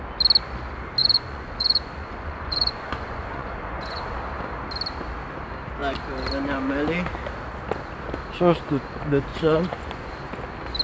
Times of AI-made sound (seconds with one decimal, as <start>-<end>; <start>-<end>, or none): 1.0-4.0; 9.3-10.1